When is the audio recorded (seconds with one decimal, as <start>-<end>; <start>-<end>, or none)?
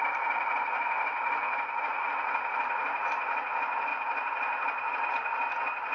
0.0-5.9